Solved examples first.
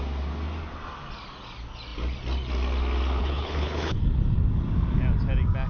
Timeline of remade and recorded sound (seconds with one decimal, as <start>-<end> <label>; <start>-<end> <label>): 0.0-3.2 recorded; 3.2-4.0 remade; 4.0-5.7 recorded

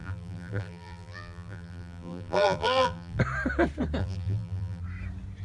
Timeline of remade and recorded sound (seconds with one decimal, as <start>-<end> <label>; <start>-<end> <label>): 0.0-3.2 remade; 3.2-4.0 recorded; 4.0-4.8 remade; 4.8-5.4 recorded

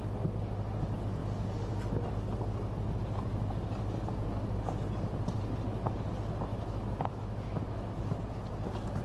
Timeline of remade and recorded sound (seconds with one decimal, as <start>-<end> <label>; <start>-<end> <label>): 0.0-6.5 recorded; 6.5-7.9 remade; 7.9-9.0 recorded

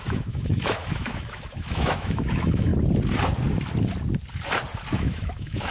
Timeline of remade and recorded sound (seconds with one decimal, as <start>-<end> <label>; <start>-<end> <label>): 0.0-2.7 remade; 2.7-4.9 recorded; 4.9-5.7 remade

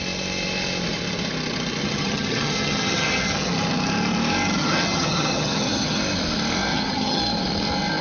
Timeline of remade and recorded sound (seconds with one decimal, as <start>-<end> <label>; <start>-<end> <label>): 0.0-1.8 recorded; 1.8-3.5 remade; 3.5-4.6 recorded; 4.6-6.0 remade; 6.0-6.7 recorded; 6.7-7.2 remade; 7.2-8.0 recorded

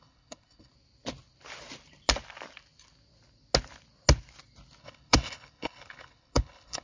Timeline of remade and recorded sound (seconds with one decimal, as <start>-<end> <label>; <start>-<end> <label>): 0.0-0.7 remade; 0.7-4.8 recorded; 4.8-6.8 remade

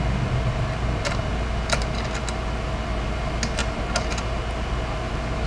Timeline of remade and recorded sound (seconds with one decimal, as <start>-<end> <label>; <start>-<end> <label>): 0.0-5.5 recorded